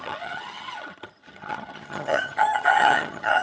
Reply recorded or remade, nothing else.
remade